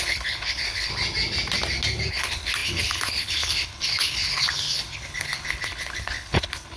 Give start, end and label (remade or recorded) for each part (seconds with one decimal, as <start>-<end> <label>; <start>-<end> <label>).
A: 0.0-0.9 remade; 0.9-2.1 recorded; 2.1-6.8 remade